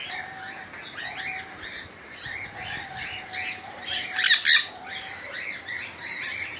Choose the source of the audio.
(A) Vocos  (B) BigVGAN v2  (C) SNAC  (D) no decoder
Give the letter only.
D